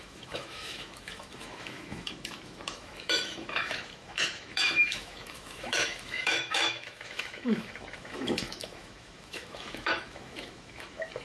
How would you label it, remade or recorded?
remade